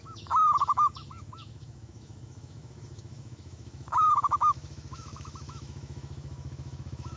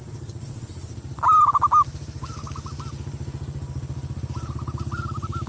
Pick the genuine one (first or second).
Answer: second